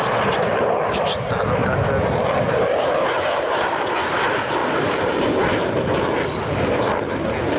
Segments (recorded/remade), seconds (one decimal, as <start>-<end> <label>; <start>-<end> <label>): 0.0-7.6 recorded

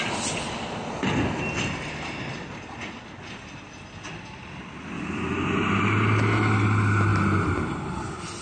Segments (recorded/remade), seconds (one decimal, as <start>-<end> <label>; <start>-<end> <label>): 0.0-8.4 recorded

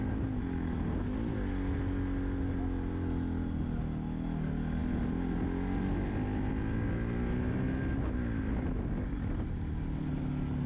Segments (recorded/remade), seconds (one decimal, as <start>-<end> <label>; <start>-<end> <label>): 0.0-10.7 recorded

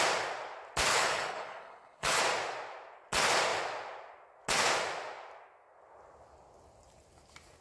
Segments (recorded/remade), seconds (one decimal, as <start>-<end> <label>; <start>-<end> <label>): 0.0-0.9 recorded; 0.9-2.2 remade; 2.2-7.6 recorded